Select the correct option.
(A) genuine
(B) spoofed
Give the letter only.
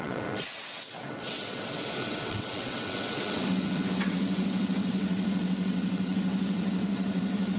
B